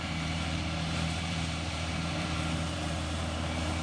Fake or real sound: fake